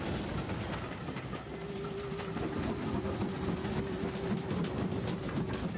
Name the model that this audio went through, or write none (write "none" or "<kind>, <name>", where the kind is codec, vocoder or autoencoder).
none